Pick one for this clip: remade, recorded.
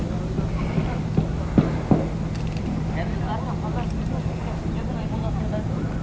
recorded